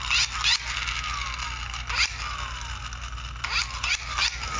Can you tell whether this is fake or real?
real